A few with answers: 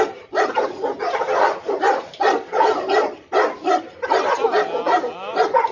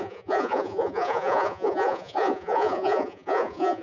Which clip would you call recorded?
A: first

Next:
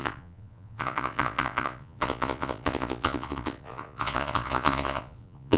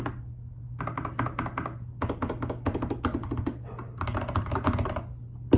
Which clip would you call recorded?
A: second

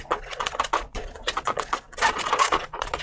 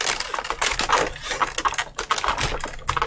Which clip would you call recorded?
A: second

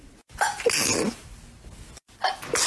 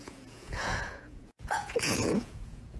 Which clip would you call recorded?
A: first